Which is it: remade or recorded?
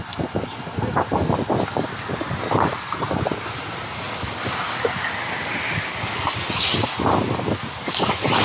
recorded